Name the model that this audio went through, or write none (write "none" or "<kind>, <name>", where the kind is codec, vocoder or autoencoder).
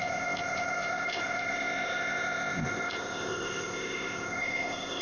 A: codec, ZipCodec